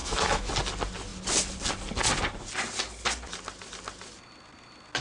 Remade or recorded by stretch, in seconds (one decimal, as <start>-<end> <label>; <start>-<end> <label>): 0.0-0.5 remade; 0.5-5.0 recorded